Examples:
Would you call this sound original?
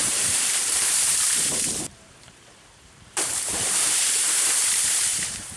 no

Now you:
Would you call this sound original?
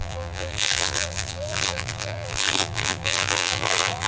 no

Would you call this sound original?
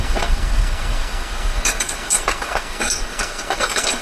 no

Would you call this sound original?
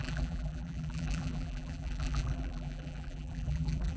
no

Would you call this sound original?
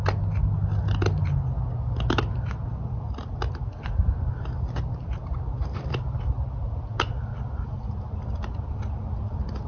yes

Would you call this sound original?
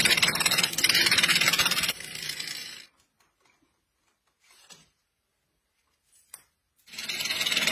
yes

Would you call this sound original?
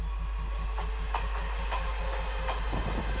yes